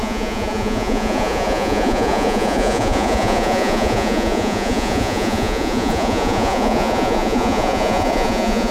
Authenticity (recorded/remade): remade